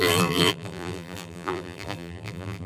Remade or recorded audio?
remade